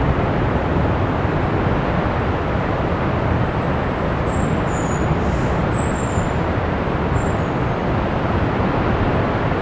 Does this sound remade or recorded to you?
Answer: recorded